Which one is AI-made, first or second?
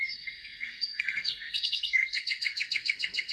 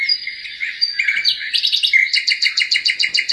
first